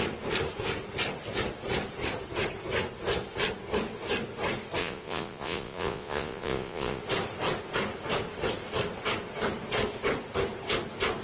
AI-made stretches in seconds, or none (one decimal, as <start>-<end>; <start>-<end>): 4.8-7.0